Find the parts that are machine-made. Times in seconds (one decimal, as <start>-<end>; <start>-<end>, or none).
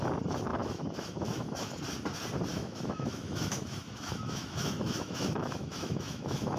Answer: 0.5-1.8; 2.5-6.6